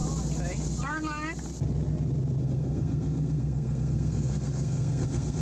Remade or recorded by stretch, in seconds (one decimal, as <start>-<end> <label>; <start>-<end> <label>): 0.0-2.4 recorded; 2.4-5.4 remade